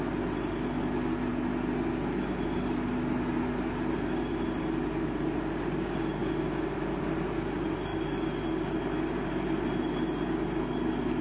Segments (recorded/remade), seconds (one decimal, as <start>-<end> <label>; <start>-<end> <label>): 0.0-11.2 recorded

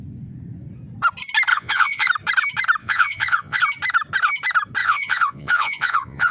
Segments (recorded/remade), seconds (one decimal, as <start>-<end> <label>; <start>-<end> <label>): 0.0-1.5 recorded; 1.5-2.1 remade; 2.1-2.8 recorded; 2.8-3.6 remade; 3.6-4.8 recorded; 4.8-6.3 remade

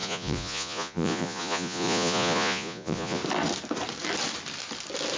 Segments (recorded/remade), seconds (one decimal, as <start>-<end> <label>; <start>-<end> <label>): 0.0-3.2 remade; 3.2-5.2 recorded

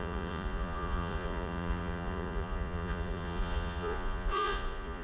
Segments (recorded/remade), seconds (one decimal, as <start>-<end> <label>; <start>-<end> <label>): 0.0-5.0 remade